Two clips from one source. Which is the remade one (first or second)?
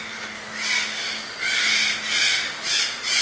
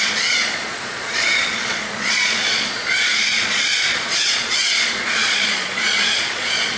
second